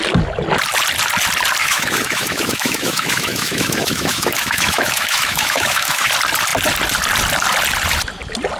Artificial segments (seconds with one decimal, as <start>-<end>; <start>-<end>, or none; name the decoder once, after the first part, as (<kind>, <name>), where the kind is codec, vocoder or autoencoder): 1.6-6.1 (autoencoder, DAC-VAE)